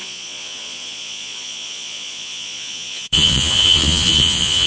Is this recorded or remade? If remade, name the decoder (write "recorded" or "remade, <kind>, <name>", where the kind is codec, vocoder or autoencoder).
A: remade, vocoder, Vocos